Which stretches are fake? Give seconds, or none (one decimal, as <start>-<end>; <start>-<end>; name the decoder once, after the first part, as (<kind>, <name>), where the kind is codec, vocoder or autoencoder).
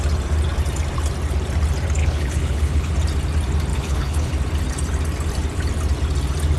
2.0-2.9 (codec, HILCodec); 3.7-4.3